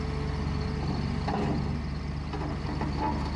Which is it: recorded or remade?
recorded